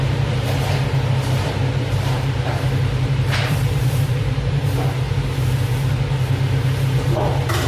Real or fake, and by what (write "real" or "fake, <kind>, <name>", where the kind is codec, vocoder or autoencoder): fake, vocoder, BigVGAN v2